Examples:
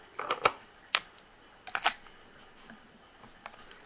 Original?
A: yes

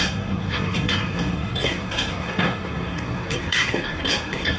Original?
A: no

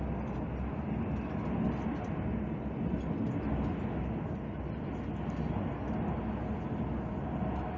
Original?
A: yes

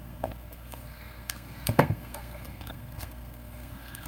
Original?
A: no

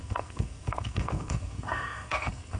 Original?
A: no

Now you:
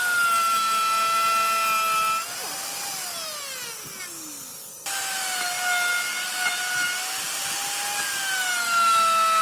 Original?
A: yes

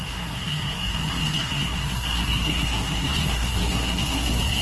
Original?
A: no